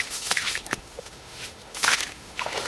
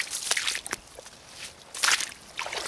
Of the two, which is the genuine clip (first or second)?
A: second